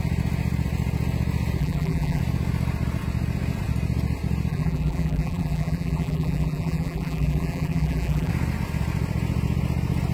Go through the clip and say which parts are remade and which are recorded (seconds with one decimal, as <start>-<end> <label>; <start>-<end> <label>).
0.0-1.6 recorded; 1.6-2.2 remade; 2.2-4.5 recorded; 4.5-8.3 remade; 8.3-10.1 recorded